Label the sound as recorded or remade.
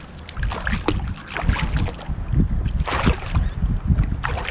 recorded